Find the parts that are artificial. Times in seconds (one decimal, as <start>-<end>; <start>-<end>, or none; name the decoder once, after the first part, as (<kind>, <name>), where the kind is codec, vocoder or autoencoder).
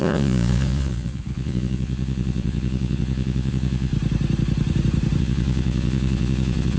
0.0-3.9 (vocoder, Vocos); 5.2-6.8